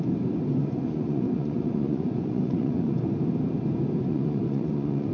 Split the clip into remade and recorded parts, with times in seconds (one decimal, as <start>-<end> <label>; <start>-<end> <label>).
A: 0.0-0.6 recorded; 0.6-3.0 remade; 3.0-4.1 recorded; 4.1-5.1 remade